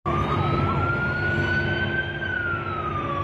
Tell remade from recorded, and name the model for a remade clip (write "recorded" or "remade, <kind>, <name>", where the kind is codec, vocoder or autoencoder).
recorded